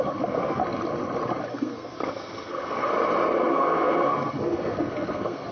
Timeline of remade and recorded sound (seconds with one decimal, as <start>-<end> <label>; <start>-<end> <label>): 0.0-0.6 remade; 0.6-1.5 recorded; 1.5-2.9 remade; 2.9-3.5 recorded; 3.5-5.5 remade